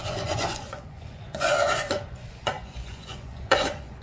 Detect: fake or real fake